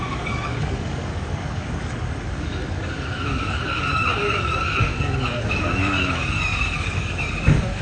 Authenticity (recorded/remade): remade